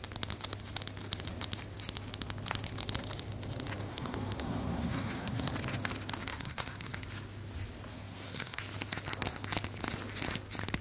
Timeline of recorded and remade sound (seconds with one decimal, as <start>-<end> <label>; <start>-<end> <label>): 0.0-3.9 recorded; 3.9-5.5 remade; 5.5-6.3 recorded; 6.3-6.9 remade; 6.9-7.9 recorded; 7.9-8.6 remade; 8.6-10.8 recorded